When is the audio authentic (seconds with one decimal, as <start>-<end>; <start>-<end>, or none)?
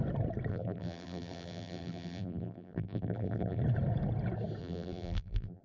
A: 0.0-0.5; 3.6-4.6